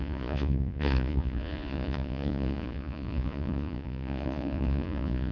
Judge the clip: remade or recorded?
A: remade